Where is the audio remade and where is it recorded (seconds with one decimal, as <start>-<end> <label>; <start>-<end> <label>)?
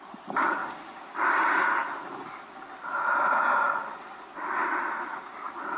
0.0-0.6 recorded; 0.6-1.2 remade; 1.2-5.8 recorded